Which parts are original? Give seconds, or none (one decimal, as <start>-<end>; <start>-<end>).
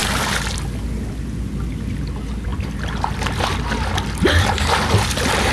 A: 0.0-2.5